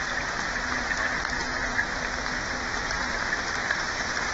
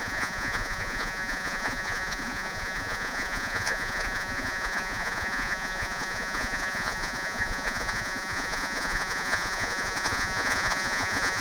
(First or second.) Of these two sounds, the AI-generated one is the second